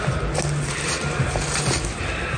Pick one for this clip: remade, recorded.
recorded